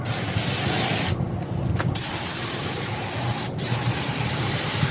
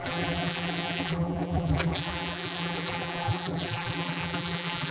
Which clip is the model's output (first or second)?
second